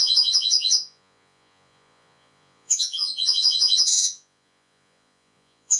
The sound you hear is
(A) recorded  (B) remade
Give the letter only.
B